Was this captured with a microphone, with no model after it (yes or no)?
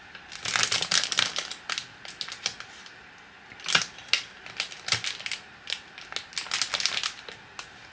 yes